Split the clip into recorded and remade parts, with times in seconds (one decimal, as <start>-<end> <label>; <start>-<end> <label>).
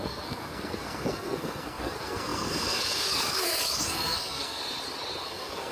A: 0.0-4.6 remade; 4.6-5.2 recorded; 5.2-5.7 remade